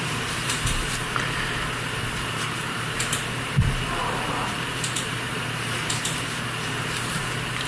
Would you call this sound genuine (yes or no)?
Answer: no